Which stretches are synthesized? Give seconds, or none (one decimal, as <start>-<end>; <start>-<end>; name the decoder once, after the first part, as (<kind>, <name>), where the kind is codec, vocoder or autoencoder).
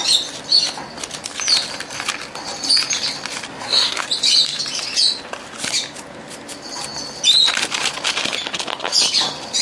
3.5-4.0 (codec, SNAC)